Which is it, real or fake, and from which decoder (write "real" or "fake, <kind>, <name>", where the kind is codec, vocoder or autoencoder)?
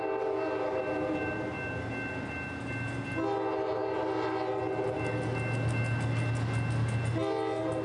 real